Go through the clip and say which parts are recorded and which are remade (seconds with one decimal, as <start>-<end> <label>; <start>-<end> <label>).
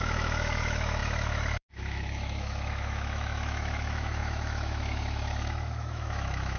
0.0-6.6 remade